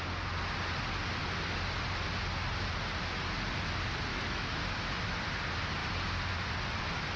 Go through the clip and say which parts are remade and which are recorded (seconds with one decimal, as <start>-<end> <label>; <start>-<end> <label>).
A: 0.0-4.1 recorded; 4.1-5.2 remade; 5.2-7.2 recorded